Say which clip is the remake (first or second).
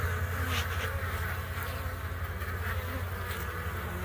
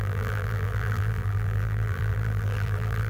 second